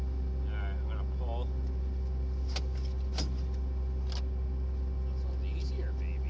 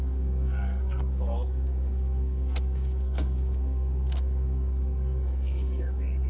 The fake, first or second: second